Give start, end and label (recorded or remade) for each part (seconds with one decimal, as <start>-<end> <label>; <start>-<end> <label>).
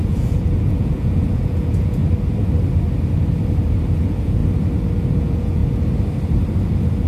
0.0-2.0 remade; 2.0-4.0 recorded; 4.0-4.4 remade; 4.4-5.1 recorded; 5.1-5.6 remade; 5.6-7.1 recorded